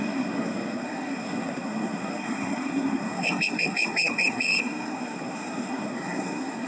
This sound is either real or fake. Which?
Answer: fake